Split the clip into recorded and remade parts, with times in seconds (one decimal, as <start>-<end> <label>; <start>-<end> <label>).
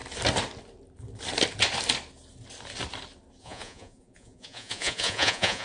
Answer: 0.0-3.4 recorded; 3.4-5.6 remade